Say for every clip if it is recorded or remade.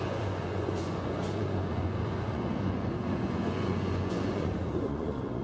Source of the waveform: remade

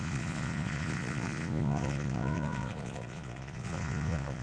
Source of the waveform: remade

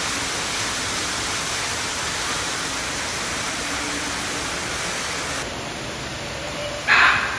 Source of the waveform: recorded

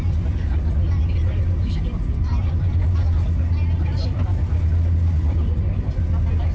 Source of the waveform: recorded